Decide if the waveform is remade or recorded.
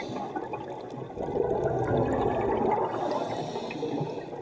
recorded